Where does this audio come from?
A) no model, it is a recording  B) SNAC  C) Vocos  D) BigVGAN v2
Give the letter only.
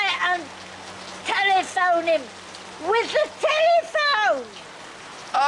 A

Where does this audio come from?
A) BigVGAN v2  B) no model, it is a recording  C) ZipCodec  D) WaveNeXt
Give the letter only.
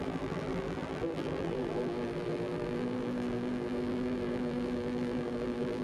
A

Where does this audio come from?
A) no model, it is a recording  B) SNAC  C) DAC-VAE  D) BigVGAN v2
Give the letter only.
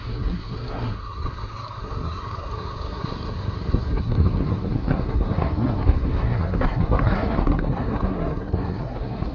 B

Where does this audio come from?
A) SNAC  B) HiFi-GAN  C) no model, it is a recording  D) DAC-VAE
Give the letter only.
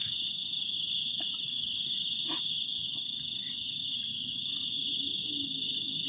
C